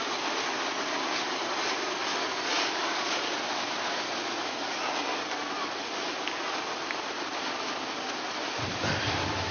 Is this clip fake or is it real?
real